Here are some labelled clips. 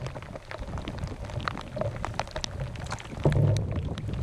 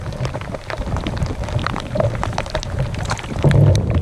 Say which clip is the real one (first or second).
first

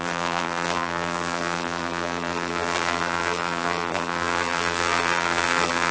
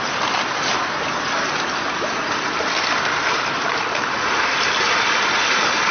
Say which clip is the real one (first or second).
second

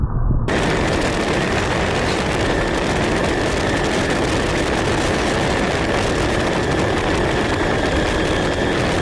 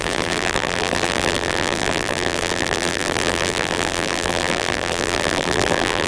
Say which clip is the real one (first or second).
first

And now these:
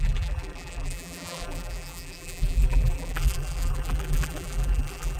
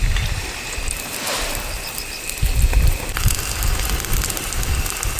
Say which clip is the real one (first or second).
second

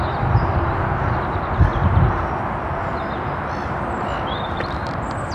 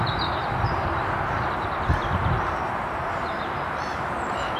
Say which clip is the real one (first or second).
first